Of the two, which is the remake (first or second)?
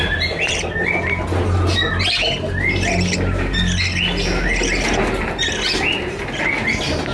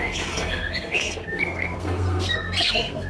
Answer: second